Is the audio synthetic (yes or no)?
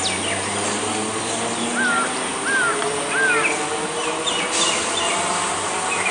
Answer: no